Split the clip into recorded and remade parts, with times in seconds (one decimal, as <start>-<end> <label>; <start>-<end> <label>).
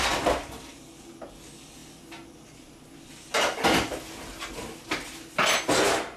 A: 0.0-6.2 recorded